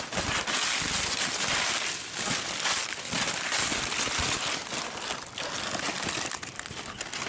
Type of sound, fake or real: real